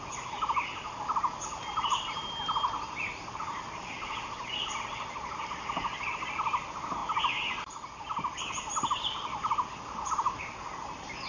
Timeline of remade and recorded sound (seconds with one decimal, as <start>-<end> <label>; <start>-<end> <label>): 0.0-11.3 recorded